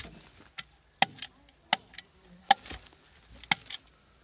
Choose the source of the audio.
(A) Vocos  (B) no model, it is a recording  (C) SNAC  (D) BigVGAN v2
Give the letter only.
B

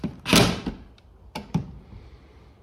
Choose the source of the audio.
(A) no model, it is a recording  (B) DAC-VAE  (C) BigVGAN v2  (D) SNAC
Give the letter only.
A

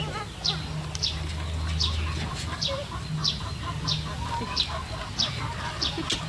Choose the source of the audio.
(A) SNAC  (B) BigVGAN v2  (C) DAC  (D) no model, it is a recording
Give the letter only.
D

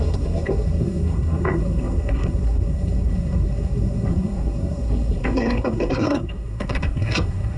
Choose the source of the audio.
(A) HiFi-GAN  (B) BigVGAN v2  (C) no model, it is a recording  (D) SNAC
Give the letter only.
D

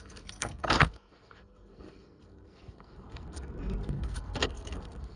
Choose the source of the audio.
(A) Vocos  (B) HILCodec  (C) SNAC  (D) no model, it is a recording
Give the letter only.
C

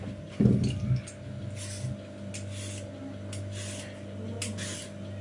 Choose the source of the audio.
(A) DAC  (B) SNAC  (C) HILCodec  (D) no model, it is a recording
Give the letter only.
D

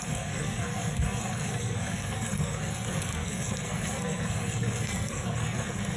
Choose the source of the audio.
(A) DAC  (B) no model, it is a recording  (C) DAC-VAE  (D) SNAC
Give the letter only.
D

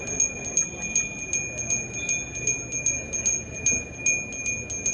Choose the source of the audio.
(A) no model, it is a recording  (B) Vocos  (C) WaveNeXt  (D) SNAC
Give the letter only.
A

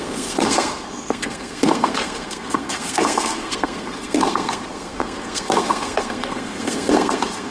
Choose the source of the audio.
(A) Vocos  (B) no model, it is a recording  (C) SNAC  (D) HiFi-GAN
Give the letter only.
C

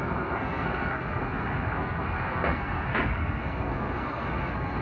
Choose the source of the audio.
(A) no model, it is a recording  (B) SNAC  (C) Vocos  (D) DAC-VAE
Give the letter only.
B